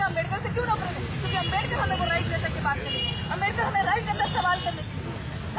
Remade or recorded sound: recorded